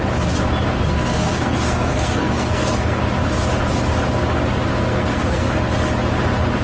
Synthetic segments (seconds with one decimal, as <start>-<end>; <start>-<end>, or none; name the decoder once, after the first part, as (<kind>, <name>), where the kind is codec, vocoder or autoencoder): 0.9-3.0 (codec, SNAC); 4.8-5.5